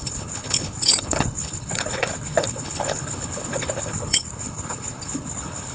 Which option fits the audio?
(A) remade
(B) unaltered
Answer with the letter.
A